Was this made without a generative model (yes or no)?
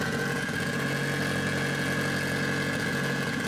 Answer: no